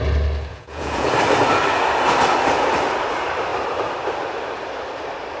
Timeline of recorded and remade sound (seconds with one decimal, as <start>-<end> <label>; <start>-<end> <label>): 0.0-0.5 recorded; 0.5-1.1 remade; 1.1-5.4 recorded

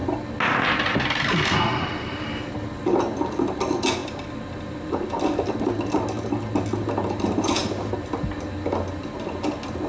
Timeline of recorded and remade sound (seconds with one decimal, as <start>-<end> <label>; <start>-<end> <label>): 0.0-9.9 recorded

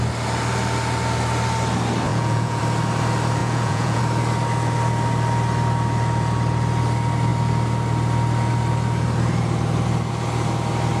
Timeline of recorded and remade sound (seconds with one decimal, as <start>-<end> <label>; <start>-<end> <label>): 0.0-2.1 recorded; 2.1-2.6 remade; 2.6-3.4 recorded; 3.4-4.0 remade; 4.0-11.0 recorded

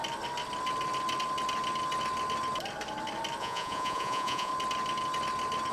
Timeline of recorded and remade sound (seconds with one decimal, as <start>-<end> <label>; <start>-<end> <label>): 0.0-3.4 recorded; 3.4-4.5 remade; 4.5-5.7 recorded